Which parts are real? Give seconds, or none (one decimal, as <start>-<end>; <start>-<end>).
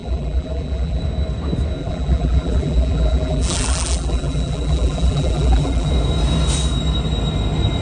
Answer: 1.0-1.8; 5.9-7.8